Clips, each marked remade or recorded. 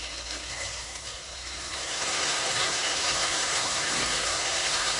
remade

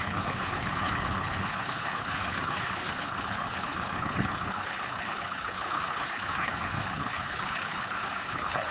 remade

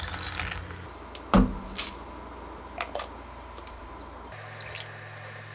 recorded